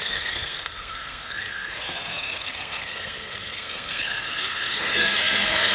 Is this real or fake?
fake